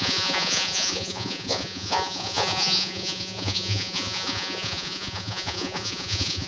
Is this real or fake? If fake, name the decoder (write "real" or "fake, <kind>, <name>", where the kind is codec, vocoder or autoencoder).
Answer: fake, vocoder, Vocos